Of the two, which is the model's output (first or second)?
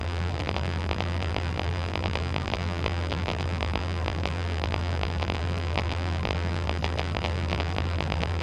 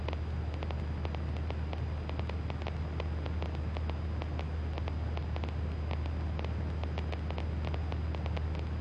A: first